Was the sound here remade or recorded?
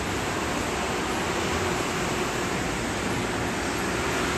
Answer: recorded